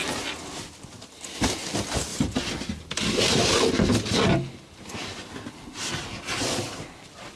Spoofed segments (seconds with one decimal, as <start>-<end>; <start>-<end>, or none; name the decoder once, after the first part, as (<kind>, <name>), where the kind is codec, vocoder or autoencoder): none